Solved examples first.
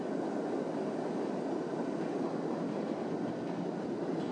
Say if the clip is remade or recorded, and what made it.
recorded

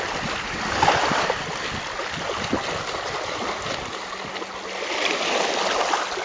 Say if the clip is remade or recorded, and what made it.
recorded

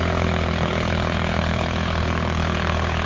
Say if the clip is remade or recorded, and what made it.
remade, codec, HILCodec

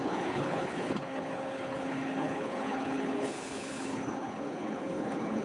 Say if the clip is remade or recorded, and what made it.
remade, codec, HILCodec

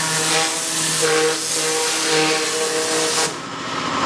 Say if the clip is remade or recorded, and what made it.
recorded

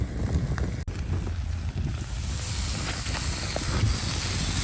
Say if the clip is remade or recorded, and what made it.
recorded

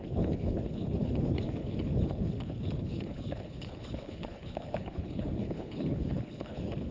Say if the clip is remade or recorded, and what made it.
remade, codec, HILCodec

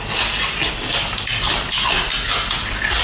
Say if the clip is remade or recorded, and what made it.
recorded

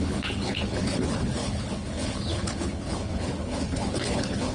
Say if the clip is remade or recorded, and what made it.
remade, codec, HILCodec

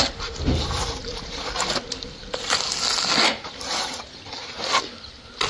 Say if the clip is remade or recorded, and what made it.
recorded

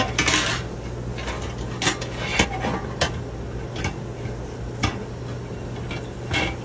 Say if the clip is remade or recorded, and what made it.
recorded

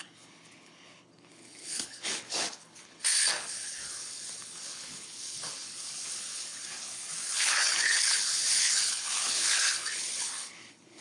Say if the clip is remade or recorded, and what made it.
remade, codec, HILCodec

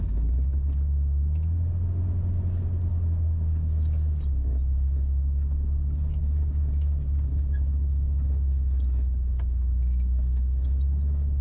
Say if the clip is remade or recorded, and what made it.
recorded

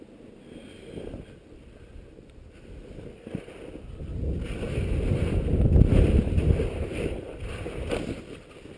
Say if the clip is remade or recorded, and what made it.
recorded